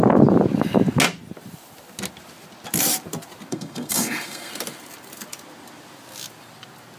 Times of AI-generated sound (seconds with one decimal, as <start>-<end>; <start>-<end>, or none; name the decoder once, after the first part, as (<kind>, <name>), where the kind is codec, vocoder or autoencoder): 3.5-4.5 (codec, SNAC)